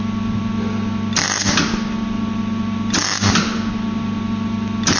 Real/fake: real